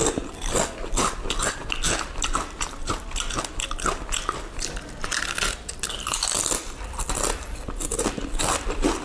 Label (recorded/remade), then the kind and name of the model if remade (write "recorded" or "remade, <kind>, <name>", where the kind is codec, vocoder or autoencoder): recorded